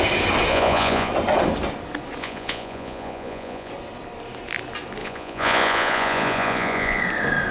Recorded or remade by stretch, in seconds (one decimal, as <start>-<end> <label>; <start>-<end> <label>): 0.0-0.5 recorded; 0.5-1.1 remade; 1.1-2.2 recorded; 2.2-3.7 remade; 3.7-5.0 recorded; 5.0-7.0 remade; 7.0-7.5 recorded